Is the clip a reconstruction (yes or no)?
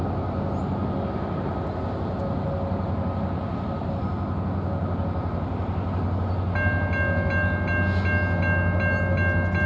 no